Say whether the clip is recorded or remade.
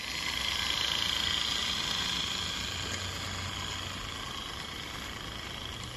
recorded